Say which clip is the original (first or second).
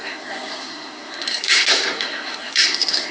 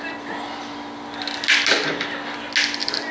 second